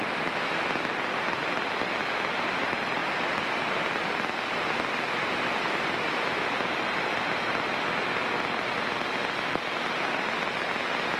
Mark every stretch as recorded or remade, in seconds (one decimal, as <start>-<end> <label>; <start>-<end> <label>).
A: 0.0-11.2 recorded